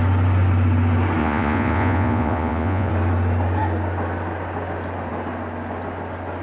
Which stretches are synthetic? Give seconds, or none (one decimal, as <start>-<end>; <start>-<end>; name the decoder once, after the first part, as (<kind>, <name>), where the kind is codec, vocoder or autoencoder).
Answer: 1.2-2.9 (vocoder, Vocos)